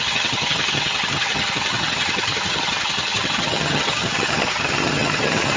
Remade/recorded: remade